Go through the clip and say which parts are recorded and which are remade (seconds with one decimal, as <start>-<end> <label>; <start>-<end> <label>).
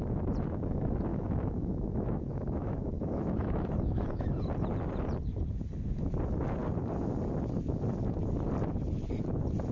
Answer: 0.0-1.1 recorded; 1.1-4.4 remade; 4.4-9.7 recorded